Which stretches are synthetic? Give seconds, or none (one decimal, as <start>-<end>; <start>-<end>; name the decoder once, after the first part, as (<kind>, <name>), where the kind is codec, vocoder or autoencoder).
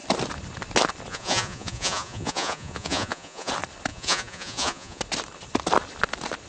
1.1-3.5 (vocoder, Vocos); 3.9-5.0